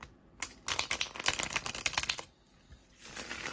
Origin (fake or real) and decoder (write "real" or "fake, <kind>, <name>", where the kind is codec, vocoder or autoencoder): real